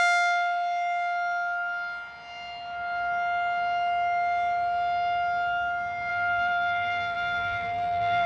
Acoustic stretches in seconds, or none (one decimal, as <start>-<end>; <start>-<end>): 0.0-6.1